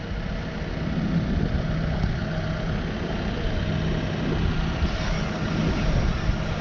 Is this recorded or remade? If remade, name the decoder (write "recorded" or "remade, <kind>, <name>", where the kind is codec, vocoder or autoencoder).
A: recorded